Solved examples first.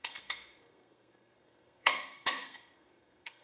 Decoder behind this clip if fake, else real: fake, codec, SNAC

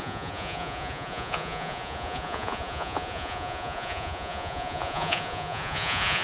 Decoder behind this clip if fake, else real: fake, vocoder, Vocos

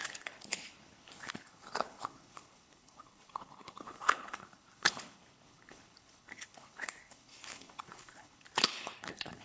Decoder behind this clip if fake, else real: fake, codec, HILCodec